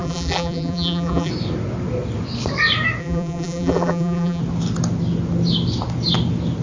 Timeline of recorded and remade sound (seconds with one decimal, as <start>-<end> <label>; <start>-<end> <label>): 0.0-1.3 remade; 1.3-3.0 recorded; 3.0-4.4 remade; 4.4-6.6 recorded